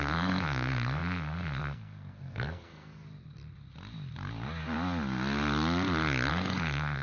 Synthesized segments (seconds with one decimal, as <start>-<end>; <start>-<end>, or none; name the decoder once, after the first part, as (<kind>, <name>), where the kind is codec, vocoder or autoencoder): 0.0-3.0 (codec, SNAC); 6.3-7.0